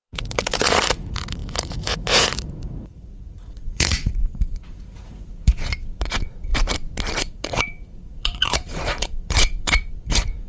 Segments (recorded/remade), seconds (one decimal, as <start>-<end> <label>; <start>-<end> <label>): 0.0-6.5 remade; 6.5-7.2 recorded; 7.2-10.5 remade